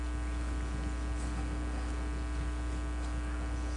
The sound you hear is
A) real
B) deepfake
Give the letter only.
A